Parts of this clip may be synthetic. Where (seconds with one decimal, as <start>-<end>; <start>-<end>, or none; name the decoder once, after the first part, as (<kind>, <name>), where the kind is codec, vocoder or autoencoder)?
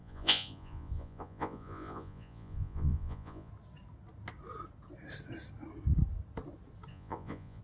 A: 0.0-3.5 (vocoder, Vocos); 6.9-7.6